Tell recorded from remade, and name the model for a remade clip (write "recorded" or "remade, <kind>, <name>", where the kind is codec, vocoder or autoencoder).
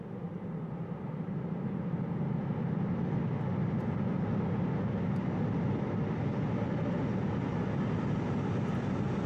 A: recorded